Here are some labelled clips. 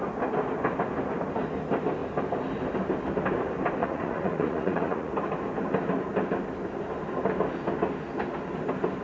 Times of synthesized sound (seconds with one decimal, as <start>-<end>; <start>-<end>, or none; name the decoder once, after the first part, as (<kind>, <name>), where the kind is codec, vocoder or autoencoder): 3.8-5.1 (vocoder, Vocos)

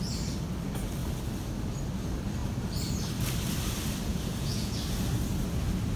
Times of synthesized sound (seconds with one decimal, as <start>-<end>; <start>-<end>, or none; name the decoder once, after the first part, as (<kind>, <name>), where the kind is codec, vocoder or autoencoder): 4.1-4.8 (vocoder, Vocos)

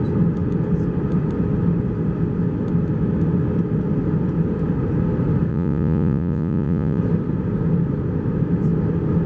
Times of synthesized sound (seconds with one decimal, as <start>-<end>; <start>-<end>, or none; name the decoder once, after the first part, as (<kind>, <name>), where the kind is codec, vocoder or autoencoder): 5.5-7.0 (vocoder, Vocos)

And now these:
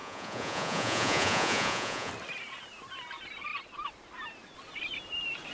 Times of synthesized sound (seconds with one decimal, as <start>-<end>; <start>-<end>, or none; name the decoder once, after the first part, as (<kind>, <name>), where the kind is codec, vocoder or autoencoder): 0.0-2.1 (vocoder, Vocos)

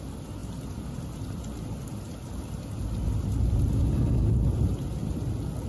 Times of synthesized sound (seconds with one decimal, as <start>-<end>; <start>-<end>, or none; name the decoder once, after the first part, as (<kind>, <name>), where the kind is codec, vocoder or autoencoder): none